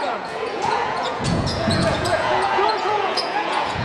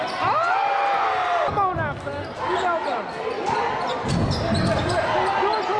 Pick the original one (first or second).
second